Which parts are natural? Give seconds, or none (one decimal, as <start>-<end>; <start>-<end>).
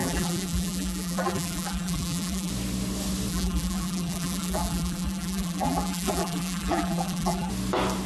2.5-3.3; 7.5-8.1